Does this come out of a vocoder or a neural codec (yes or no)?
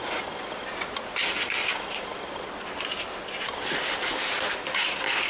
no